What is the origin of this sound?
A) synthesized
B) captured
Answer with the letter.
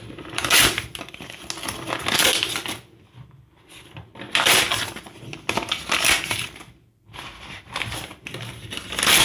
B